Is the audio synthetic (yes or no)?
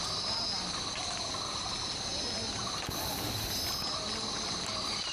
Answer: no